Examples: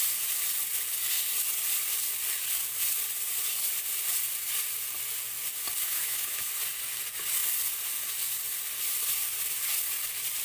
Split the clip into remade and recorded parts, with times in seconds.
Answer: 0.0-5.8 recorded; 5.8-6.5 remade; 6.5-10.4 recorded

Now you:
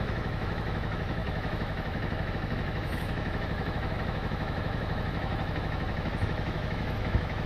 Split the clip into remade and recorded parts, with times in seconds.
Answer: 0.0-7.5 remade